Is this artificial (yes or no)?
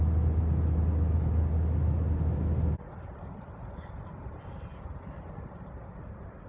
no